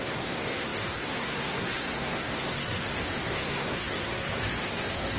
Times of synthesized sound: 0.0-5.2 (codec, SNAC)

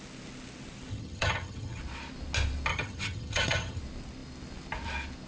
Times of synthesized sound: 0.9-1.8 (vocoder, HiFi-GAN); 2.7-3.8

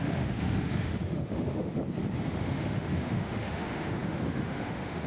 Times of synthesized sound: 0.0-1.8 (autoencoder, DAC-VAE); 2.3-5.1

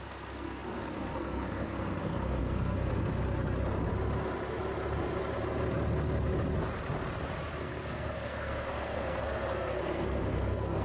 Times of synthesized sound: 0.0-2.9 (codec, SNAC); 7.6-10.8

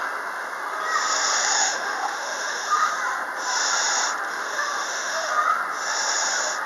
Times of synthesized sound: 1.4-2.9 (autoencoder, DAC-VAE); 4.3-5.3